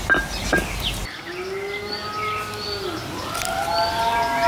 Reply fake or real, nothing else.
real